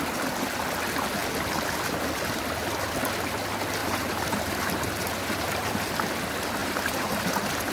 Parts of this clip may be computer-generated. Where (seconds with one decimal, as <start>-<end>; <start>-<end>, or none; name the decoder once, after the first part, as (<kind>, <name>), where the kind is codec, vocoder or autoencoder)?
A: 3.8-5.7 (vocoder, BigVGAN v2); 6.6-7.2